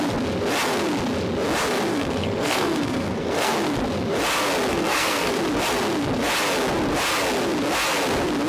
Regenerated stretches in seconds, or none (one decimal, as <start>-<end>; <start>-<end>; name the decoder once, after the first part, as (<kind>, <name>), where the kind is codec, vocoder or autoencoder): 1.9-3.5 (codec, SNAC); 4.7-5.4